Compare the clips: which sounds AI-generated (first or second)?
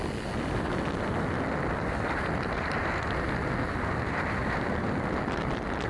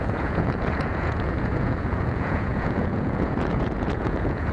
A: second